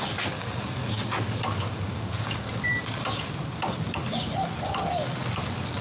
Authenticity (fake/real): real